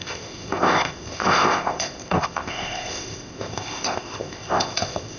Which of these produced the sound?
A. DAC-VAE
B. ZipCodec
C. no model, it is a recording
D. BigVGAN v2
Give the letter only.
B